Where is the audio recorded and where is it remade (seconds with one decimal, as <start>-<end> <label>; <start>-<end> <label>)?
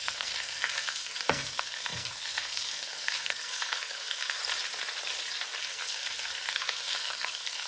0.0-4.4 remade; 4.4-5.6 recorded; 5.6-7.7 remade